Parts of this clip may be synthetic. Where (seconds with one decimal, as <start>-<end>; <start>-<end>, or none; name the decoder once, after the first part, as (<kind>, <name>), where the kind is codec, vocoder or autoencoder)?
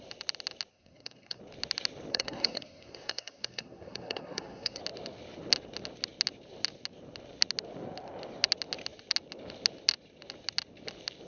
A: 0.7-1.4 (codec, SNAC); 2.1-4.8